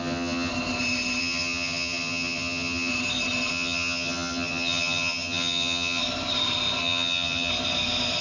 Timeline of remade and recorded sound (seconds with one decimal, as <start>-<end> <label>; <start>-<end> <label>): 0.0-0.5 remade; 0.5-1.2 recorded; 1.2-2.9 remade; 2.9-3.5 recorded; 3.5-6.0 remade; 6.0-6.8 recorded; 6.8-7.5 remade; 7.5-8.2 recorded